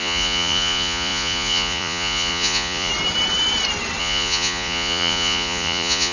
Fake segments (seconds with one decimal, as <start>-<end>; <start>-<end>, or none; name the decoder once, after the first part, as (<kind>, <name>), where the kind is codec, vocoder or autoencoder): 0.0-2.9 (vocoder, Vocos); 4.0-6.1